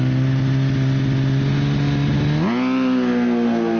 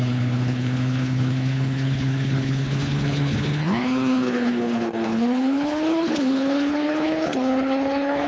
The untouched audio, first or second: first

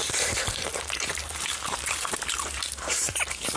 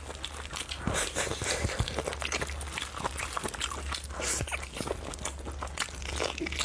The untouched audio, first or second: second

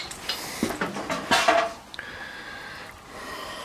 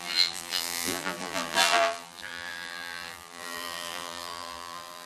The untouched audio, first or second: first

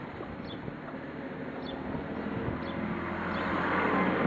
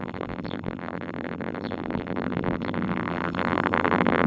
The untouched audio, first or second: first